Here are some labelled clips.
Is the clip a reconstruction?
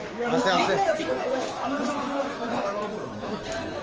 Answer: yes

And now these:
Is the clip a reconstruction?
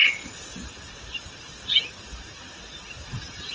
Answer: no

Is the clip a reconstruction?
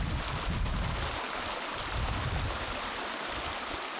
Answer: no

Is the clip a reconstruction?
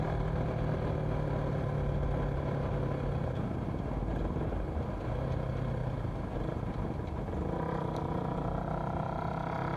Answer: no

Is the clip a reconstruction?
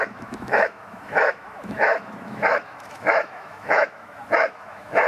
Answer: yes